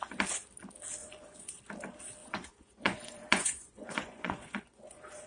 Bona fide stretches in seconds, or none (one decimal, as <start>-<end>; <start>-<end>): 0.0-1.0; 1.6-2.2